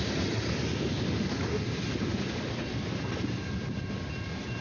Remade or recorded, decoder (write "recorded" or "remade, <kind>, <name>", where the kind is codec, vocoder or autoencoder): recorded